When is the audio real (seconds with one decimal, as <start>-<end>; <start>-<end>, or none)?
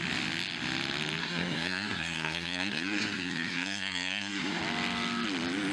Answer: 0.0-1.2; 4.6-5.7